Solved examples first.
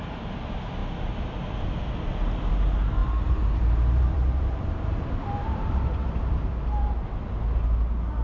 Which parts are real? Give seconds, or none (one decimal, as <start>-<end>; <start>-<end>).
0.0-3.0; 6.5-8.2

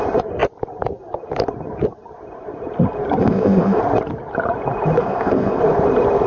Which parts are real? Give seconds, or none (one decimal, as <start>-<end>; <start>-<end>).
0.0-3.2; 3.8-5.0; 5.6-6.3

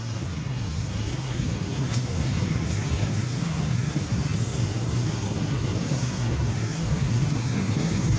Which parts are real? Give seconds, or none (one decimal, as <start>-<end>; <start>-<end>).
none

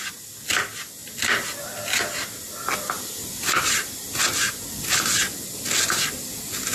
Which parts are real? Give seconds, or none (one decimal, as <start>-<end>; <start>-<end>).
0.0-6.7